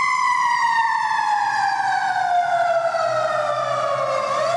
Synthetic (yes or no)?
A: no